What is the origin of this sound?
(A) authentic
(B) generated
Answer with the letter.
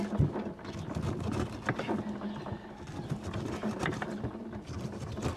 A